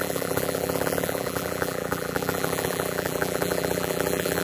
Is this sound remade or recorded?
remade